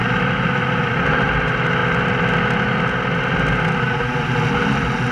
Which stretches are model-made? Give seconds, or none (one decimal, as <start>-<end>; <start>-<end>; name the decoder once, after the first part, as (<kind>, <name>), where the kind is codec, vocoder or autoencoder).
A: 0.0-1.8 (vocoder, BigVGAN v2); 4.0-5.1